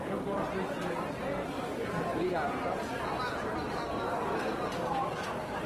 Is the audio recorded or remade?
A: remade